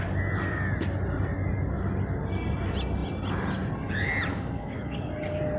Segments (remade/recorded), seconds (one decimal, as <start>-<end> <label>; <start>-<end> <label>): 0.0-4.3 recorded; 4.3-5.1 remade; 5.1-5.6 recorded